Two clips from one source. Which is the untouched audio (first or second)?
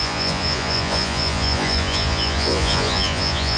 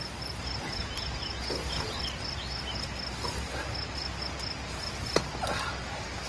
second